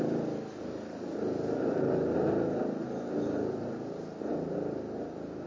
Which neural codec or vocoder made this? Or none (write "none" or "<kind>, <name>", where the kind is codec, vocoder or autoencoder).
none